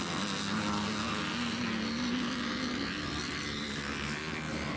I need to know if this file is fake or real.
real